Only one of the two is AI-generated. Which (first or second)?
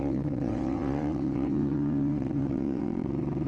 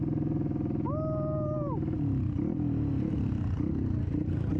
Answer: first